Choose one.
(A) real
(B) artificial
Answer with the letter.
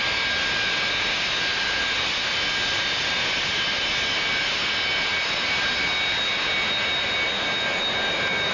A